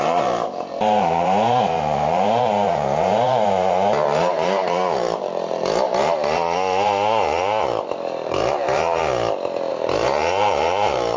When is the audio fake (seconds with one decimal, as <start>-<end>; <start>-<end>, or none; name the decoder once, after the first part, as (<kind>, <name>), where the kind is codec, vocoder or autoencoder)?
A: 0.0-9.0 (vocoder, BigVGAN v2); 9.7-11.2